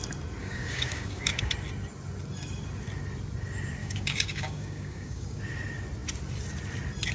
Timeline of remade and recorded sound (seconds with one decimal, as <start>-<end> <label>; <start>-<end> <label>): 0.0-0.4 recorded; 0.4-1.5 remade; 1.5-3.8 recorded; 3.8-5.4 remade; 5.4-7.1 recorded